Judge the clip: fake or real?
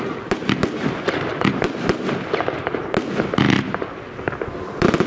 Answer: real